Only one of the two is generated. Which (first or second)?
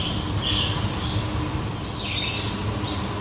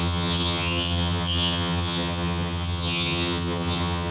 second